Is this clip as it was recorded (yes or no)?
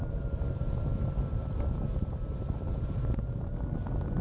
yes